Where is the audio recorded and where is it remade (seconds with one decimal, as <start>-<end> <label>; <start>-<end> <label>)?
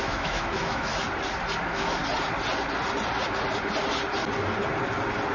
0.0-0.9 remade; 0.9-1.6 recorded; 1.6-2.0 remade; 2.0-5.3 recorded